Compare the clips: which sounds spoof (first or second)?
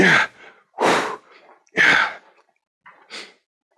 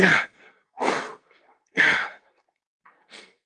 second